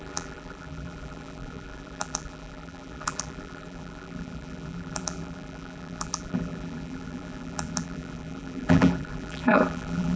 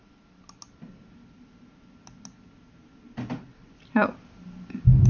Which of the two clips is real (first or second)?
second